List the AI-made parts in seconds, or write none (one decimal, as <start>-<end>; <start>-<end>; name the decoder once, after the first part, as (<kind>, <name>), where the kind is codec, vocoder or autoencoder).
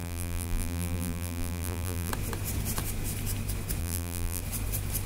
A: 0.0-2.1 (vocoder, BigVGAN v2); 3.8-4.4